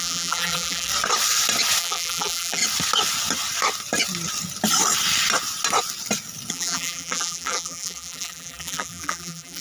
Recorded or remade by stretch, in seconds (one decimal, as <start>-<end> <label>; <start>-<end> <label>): 0.0-0.9 remade; 0.9-1.8 recorded; 1.8-2.6 remade; 2.6-6.5 recorded; 6.5-9.6 remade